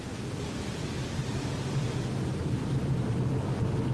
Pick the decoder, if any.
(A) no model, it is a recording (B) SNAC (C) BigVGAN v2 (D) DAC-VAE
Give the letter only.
A